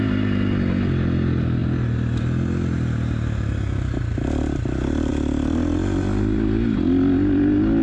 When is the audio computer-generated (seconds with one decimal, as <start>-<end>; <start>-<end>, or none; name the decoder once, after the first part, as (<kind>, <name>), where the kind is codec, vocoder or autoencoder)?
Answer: none